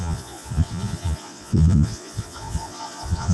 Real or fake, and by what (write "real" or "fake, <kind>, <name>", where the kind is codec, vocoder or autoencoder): fake, vocoder, Vocos